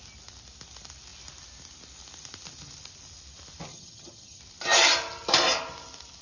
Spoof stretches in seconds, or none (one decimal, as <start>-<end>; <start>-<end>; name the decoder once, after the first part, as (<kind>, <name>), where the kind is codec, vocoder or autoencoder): 3.7-4.4 (vocoder, HiFi-GAN)